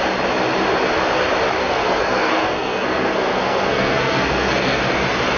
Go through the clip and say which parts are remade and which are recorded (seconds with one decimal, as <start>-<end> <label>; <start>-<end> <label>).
0.0-1.6 recorded; 1.6-4.8 remade; 4.8-5.4 recorded